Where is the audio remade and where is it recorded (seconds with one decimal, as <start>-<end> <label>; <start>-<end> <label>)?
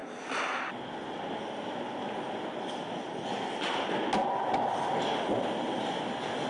0.0-6.5 recorded